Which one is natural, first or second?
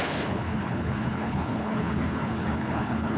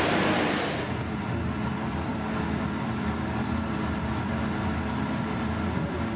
second